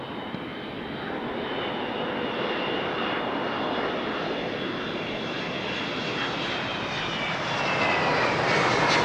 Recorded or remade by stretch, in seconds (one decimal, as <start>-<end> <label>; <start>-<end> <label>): 0.0-0.5 recorded; 0.5-5.5 remade; 5.5-9.0 recorded